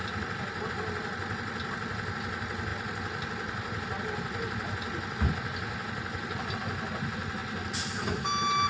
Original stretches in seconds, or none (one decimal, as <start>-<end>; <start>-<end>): 0.0-8.7